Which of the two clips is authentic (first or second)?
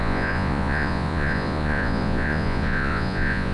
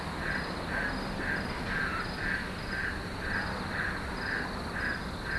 second